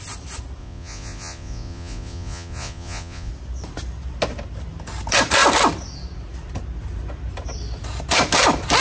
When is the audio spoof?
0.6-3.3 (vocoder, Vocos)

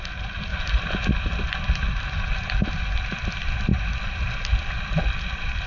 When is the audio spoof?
none

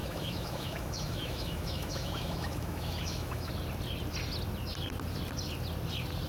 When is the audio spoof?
0.0-3.5 (autoencoder, DAC-VAE)

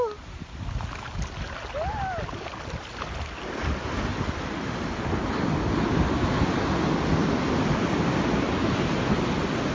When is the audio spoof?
none